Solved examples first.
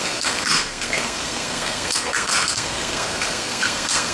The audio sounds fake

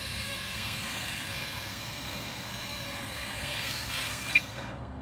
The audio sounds fake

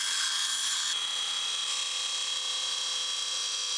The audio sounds real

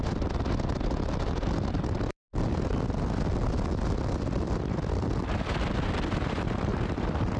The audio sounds fake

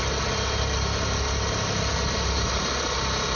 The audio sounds real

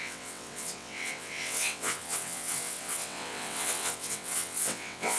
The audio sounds fake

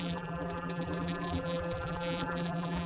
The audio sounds fake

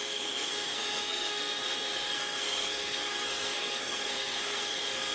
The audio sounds fake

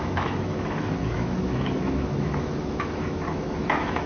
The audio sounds fake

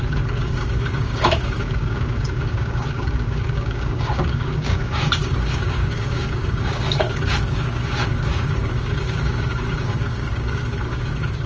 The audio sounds fake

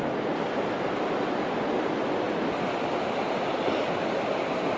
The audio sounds real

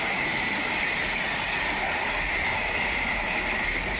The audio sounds real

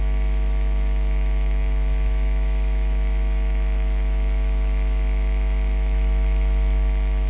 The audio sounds fake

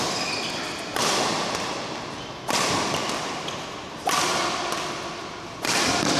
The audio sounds real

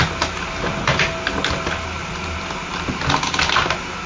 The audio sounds real